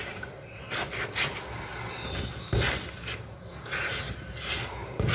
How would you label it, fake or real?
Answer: real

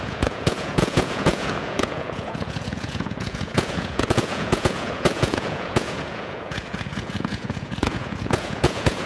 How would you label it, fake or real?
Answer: fake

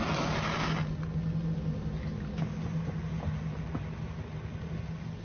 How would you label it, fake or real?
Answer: real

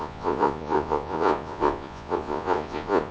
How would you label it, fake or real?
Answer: fake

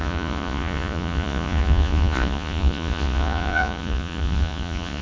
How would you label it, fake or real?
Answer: fake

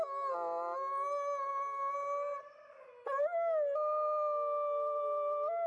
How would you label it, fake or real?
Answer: real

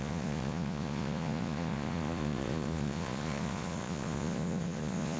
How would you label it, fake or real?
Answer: fake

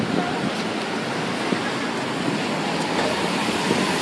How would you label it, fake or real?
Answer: real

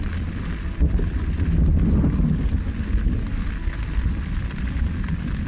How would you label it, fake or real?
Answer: real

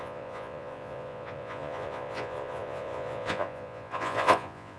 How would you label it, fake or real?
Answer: fake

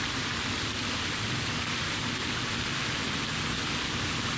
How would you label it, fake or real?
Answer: real